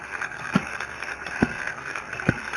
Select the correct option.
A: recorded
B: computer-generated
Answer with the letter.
B